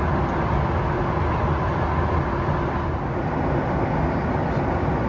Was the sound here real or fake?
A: real